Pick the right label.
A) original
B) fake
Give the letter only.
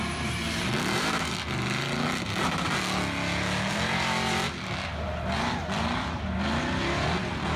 A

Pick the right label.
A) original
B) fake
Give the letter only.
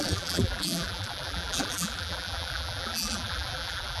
B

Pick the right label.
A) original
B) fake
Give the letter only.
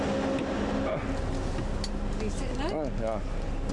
A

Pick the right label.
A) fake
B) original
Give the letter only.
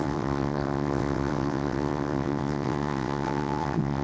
A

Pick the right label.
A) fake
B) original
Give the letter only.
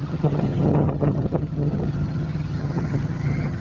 A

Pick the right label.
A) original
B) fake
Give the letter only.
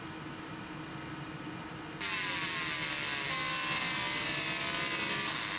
A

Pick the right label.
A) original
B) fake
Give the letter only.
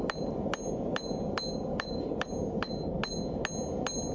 A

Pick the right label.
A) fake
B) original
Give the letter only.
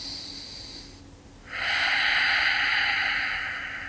B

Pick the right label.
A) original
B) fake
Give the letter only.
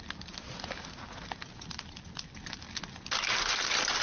A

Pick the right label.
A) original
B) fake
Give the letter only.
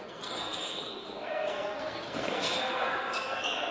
B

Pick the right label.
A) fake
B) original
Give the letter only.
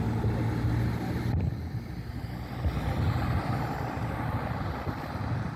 B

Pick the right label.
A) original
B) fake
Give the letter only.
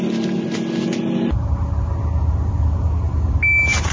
A